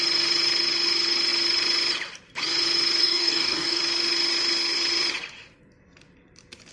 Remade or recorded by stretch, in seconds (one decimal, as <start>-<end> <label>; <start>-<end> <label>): 0.0-3.0 recorded; 3.0-3.8 remade; 3.8-6.7 recorded